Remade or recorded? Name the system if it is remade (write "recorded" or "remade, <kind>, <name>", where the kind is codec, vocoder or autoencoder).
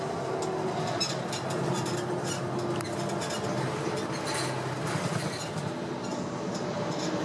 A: recorded